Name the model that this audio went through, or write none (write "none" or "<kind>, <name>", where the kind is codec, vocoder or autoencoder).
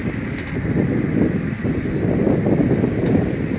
none